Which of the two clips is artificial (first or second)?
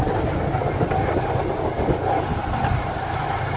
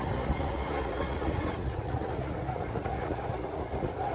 second